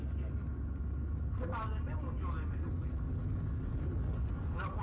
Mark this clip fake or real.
real